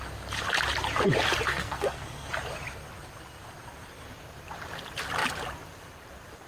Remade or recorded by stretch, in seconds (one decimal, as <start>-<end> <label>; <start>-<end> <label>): 0.0-1.5 recorded; 1.5-2.3 remade; 2.3-6.5 recorded